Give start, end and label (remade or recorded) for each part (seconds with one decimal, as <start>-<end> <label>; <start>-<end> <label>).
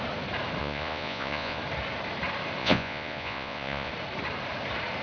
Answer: 0.0-0.6 recorded; 0.6-1.6 remade; 1.6-2.6 recorded; 2.6-3.9 remade; 3.9-5.0 recorded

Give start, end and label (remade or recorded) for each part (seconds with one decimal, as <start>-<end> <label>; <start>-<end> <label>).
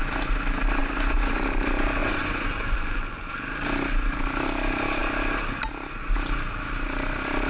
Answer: 0.0-0.8 recorded; 0.8-1.3 remade; 1.3-2.0 recorded; 2.0-3.3 remade; 3.3-7.5 recorded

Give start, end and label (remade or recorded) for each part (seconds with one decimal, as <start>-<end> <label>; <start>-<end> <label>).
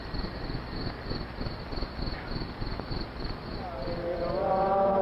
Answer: 0.0-5.0 recorded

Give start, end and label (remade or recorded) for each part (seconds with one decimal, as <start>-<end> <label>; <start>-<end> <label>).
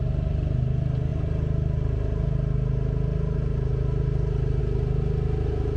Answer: 0.0-5.8 recorded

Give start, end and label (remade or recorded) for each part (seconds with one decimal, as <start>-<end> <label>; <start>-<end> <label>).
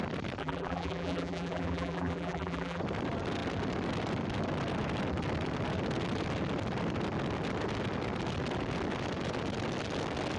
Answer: 0.0-0.4 recorded; 0.4-2.8 remade; 2.8-10.4 recorded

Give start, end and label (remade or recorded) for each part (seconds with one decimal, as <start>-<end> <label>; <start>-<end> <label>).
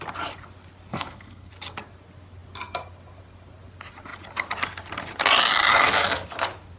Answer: 0.0-0.9 recorded; 0.9-1.5 remade; 1.5-6.8 recorded